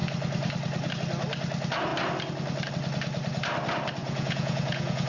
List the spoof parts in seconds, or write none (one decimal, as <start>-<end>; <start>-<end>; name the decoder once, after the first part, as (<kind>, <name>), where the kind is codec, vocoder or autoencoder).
4.0-5.1 (vocoder, Vocos)